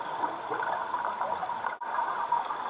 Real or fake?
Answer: real